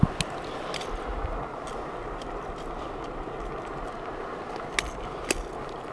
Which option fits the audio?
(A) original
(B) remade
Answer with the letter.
A